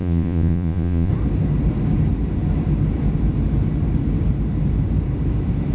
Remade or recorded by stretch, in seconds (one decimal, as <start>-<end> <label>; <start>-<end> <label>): 0.0-1.1 remade; 1.1-5.7 recorded